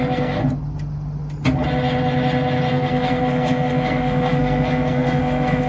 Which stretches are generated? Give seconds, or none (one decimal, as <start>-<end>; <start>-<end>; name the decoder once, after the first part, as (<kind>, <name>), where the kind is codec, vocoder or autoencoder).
0.0-0.4 (codec, SNAC); 2.7-5.7